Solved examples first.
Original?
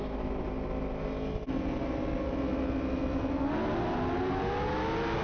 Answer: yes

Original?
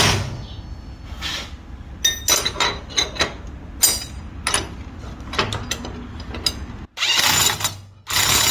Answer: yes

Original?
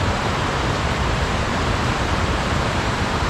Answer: no